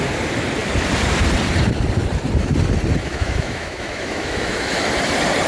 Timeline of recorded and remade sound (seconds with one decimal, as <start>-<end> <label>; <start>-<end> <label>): 0.0-3.0 recorded; 3.0-4.7 remade; 4.7-5.5 recorded